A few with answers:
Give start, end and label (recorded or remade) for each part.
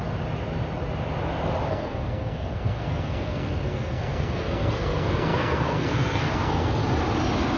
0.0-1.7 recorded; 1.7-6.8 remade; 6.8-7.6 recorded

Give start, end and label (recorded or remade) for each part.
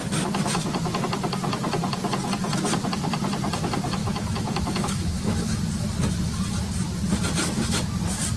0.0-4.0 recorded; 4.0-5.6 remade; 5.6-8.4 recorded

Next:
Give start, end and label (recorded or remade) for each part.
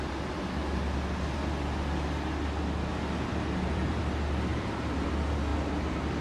0.0-2.9 recorded; 2.9-4.0 remade; 4.0-4.5 recorded; 4.5-5.1 remade; 5.1-5.5 recorded; 5.5-6.2 remade